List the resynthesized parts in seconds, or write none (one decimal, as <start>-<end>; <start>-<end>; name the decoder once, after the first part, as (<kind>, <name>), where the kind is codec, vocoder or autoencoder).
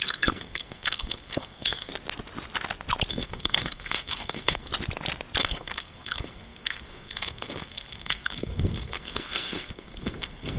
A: 0.0-1.9 (codec, SNAC); 3.1-4.7; 5.4-10.6